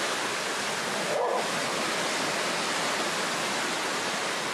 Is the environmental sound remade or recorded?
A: recorded